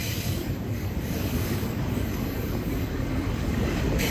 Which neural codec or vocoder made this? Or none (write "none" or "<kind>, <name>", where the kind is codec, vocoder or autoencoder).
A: codec, DAC